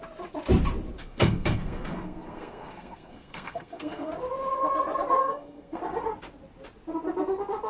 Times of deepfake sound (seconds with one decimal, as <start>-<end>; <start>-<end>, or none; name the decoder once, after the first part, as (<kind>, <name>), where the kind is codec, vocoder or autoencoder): 1.0-4.1 (codec, SNAC); 5.2-5.8